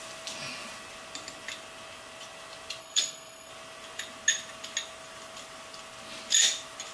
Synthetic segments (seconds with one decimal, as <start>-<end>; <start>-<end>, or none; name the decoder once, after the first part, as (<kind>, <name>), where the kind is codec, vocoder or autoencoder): 2.8-3.5 (codec, SNAC)